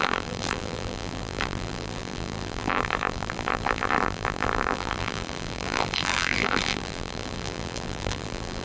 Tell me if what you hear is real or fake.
fake